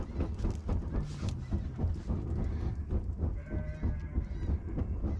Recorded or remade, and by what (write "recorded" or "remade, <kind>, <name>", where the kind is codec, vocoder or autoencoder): recorded